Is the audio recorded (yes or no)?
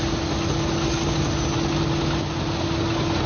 yes